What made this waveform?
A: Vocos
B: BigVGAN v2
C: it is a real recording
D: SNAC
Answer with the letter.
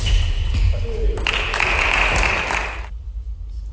C